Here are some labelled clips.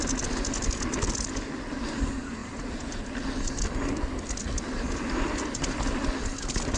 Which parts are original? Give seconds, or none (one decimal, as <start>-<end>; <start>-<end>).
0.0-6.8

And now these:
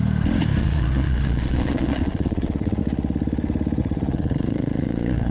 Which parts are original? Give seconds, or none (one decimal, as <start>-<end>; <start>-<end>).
0.0-0.6; 2.8-3.8

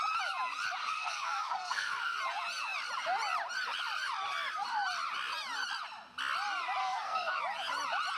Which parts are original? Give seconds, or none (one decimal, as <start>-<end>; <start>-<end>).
0.0-0.8; 2.2-6.8; 7.4-8.2